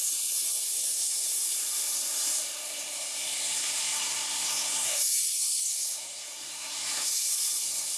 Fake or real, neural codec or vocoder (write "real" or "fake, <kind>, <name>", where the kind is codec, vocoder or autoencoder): fake, codec, SNAC